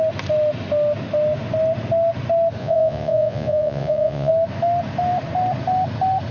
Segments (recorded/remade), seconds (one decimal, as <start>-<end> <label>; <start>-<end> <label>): 0.0-2.6 recorded; 2.6-4.3 remade; 4.3-6.3 recorded